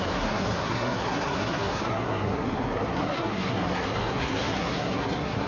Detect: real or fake fake